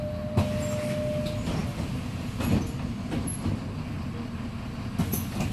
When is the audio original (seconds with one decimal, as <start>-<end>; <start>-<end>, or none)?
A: 0.0-5.5